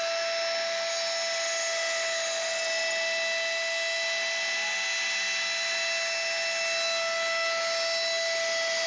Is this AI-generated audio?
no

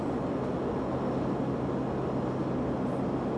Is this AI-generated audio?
no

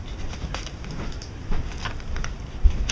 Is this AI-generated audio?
no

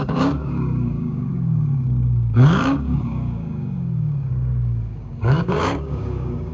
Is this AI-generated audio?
yes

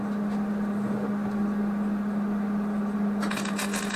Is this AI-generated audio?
no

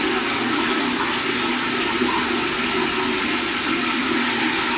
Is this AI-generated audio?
no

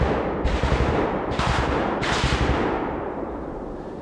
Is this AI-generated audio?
yes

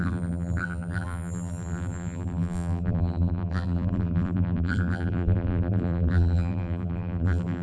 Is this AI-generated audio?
yes